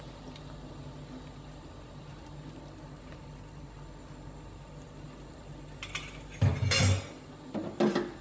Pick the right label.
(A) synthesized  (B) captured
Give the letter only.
B